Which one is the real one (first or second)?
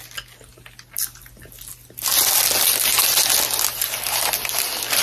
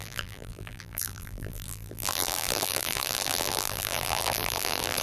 first